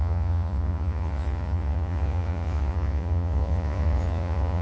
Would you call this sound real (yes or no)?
no